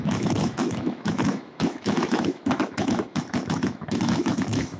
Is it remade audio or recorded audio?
remade